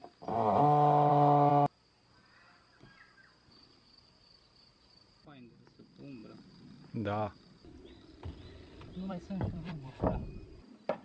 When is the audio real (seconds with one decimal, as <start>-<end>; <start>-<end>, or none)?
0.0-1.1; 1.5-2.0; 6.2-9.1